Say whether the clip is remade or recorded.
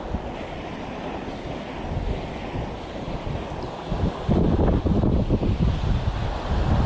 recorded